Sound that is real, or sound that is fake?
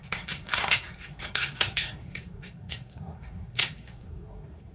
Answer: fake